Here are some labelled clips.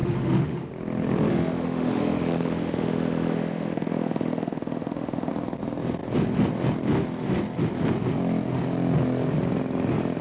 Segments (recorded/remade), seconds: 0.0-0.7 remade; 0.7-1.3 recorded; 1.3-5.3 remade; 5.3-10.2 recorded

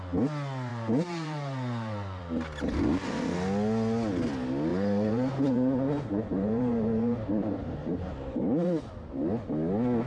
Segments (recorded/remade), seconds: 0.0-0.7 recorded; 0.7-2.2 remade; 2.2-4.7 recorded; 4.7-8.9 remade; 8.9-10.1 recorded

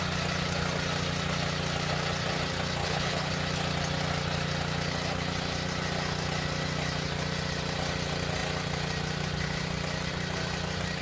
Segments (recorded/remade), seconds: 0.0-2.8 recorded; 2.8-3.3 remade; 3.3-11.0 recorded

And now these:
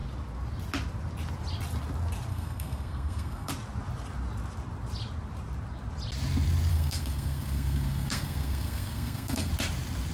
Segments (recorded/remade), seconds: 0.0-2.3 recorded; 2.3-3.5 remade; 3.5-6.7 recorded; 6.7-9.5 remade; 9.5-10.1 recorded

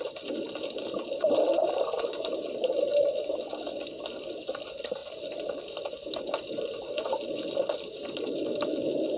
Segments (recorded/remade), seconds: 0.0-9.2 recorded

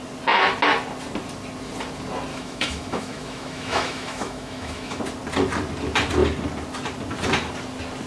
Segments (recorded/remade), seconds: 0.0-2.3 recorded; 2.3-5.0 remade; 5.0-8.1 recorded